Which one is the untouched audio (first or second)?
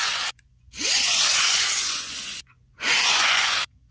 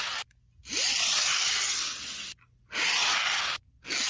second